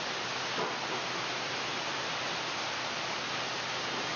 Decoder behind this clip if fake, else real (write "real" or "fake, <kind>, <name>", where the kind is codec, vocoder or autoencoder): real